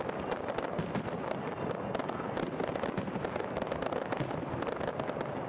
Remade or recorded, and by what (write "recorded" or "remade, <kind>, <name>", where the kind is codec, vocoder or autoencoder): recorded